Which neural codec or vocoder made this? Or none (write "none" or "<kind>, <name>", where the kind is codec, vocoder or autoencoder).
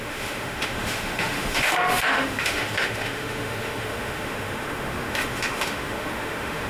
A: autoencoder, DAC-VAE